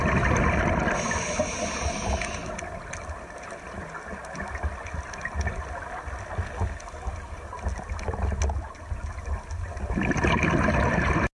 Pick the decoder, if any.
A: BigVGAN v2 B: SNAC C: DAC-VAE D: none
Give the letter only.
D